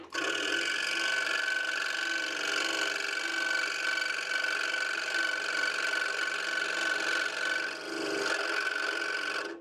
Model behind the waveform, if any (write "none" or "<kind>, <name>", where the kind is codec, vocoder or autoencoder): none